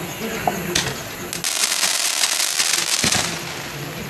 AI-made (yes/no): no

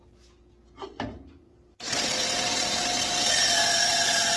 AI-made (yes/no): no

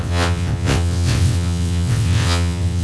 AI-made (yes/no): yes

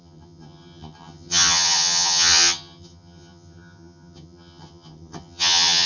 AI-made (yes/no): yes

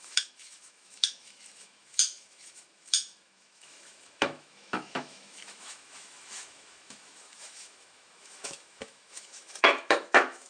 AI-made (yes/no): yes